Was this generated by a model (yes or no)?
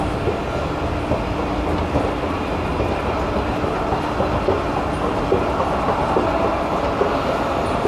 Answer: no